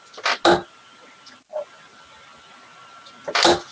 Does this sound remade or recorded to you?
recorded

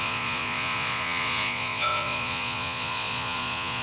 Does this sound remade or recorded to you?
remade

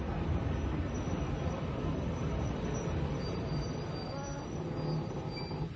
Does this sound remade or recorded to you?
recorded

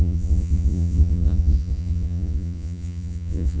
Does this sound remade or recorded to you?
remade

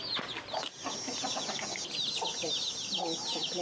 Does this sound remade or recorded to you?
recorded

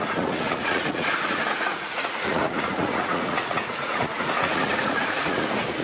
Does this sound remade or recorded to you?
remade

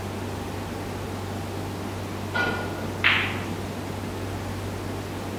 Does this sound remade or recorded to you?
recorded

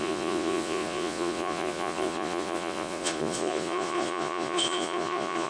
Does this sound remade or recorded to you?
remade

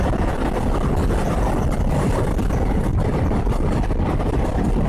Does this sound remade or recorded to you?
recorded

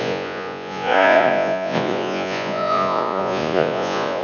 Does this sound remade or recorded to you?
remade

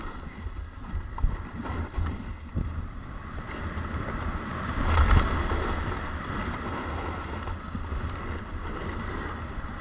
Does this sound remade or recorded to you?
recorded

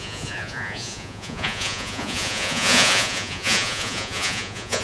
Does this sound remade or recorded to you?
remade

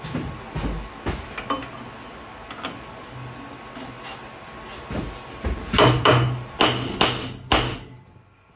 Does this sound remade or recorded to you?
recorded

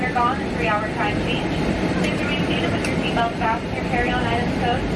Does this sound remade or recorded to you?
recorded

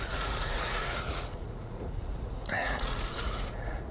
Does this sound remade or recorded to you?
remade